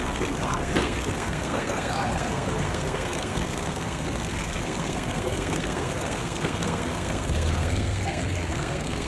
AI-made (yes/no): yes